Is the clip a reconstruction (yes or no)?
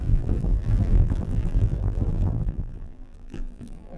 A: yes